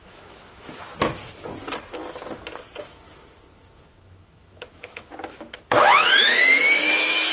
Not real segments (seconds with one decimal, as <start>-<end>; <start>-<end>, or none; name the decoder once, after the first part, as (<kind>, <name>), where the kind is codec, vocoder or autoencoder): 0.0-0.9 (autoencoder, DAC-VAE); 2.8-7.3